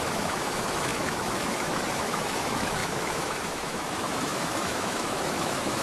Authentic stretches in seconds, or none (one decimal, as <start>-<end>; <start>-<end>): none